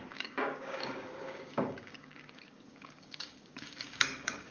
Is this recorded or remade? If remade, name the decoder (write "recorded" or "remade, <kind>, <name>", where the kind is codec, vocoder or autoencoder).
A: remade, codec, DAC